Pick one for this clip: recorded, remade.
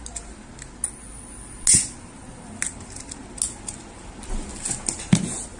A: recorded